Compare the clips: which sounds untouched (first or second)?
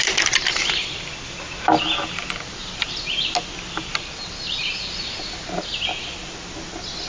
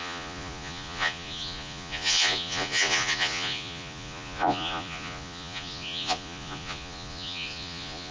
first